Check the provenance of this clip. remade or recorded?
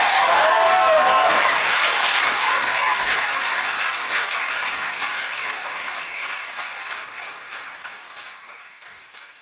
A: remade